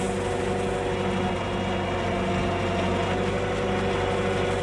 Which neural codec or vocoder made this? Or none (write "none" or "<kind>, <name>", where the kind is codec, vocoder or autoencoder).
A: none